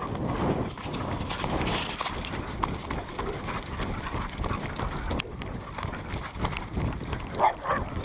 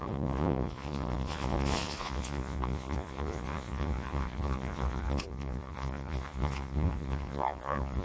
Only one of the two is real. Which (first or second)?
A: first